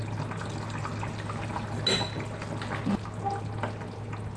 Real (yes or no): yes